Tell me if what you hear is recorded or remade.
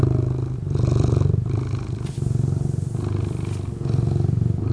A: recorded